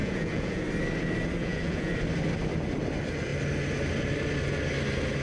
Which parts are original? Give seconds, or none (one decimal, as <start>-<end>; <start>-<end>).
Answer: 0.6-1.4; 1.9-5.2

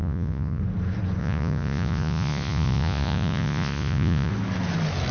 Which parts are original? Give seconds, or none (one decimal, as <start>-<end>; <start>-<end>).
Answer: 0.6-1.2; 4.3-5.1

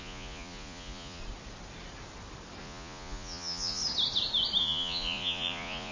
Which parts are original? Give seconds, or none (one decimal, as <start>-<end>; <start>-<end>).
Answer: 1.2-2.6; 3.8-4.6

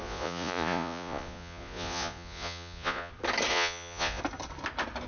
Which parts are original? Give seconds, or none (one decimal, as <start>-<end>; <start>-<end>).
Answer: 3.1-3.5; 4.2-5.1